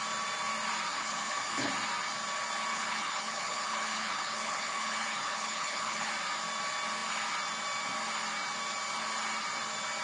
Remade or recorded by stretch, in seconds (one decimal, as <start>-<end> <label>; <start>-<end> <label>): 0.0-0.9 recorded; 0.9-1.7 remade; 1.7-2.7 recorded; 2.7-6.1 remade; 6.1-10.0 recorded